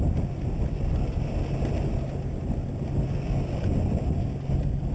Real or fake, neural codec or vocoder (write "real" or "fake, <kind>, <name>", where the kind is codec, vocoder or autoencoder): real